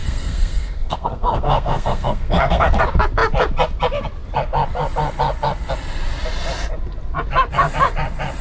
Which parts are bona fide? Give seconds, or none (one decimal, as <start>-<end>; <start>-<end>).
2.8-8.4